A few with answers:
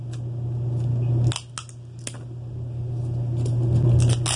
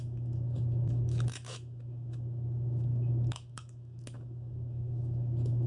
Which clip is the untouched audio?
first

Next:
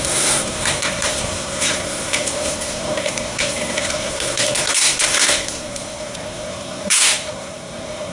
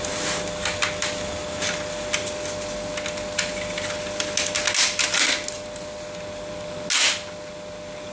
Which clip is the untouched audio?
second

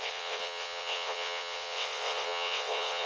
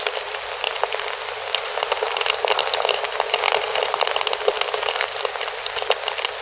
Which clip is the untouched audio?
second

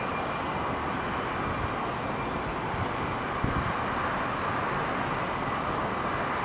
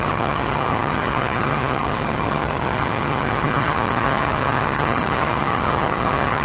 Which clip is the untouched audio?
first